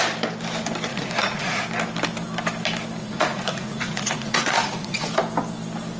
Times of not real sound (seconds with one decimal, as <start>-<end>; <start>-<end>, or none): 0.9-1.6; 3.0-5.1